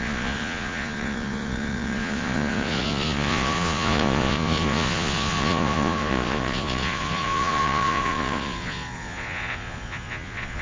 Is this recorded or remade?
remade